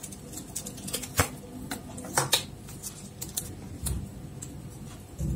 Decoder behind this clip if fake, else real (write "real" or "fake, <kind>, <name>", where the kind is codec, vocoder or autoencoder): real